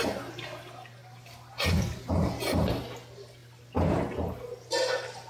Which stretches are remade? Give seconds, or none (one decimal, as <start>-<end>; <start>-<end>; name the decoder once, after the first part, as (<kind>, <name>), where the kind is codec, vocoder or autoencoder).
none